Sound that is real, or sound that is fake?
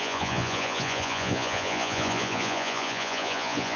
fake